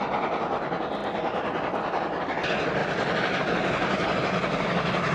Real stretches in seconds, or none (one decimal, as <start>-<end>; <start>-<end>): 0.0-5.1

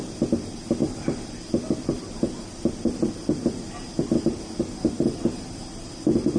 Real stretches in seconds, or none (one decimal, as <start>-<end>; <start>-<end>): 0.0-6.4